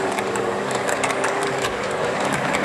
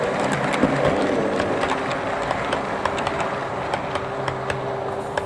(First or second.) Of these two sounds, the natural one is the second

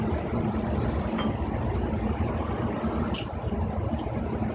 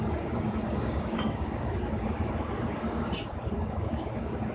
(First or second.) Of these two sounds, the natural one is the first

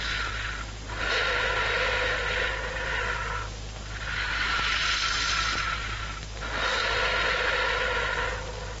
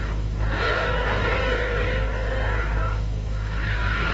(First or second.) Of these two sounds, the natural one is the first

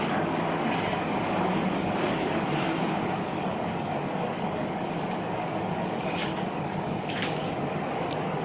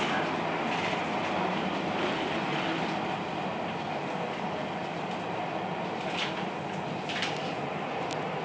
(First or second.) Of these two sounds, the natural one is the second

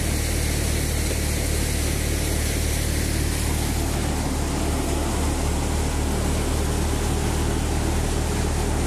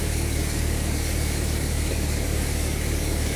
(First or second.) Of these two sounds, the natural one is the first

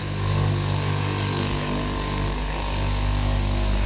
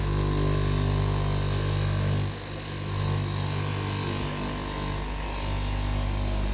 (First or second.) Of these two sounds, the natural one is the second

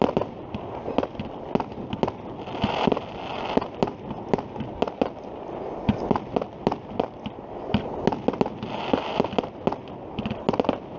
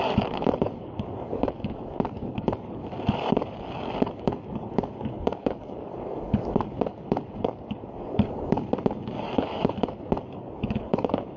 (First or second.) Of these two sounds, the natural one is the first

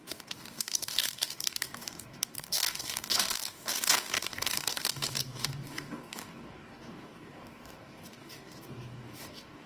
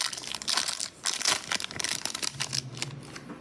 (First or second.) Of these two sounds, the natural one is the second